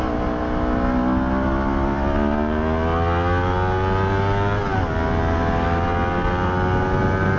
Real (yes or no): yes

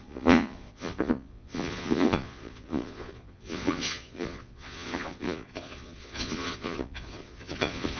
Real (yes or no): no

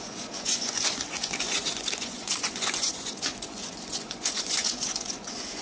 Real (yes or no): no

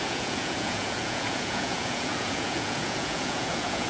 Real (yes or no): no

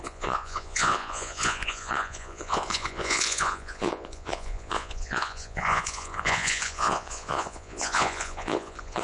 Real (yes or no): no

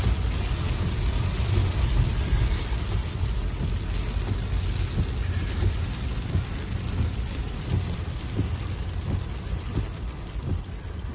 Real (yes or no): yes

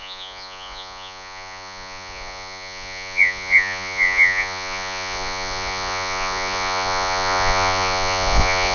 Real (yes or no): no